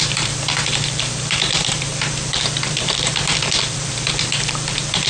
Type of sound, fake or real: fake